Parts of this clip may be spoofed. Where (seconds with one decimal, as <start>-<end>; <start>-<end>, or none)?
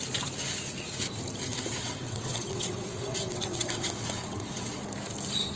1.5-4.7